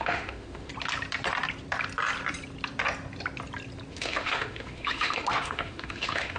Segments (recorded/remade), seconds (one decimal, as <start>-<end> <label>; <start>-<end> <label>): 0.0-0.7 remade; 0.7-3.9 recorded; 3.9-6.4 remade